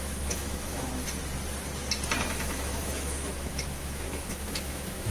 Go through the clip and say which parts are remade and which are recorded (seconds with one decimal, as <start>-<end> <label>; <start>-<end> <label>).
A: 0.0-0.9 remade; 0.9-2.3 recorded; 2.3-5.1 remade